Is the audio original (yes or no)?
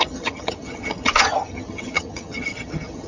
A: no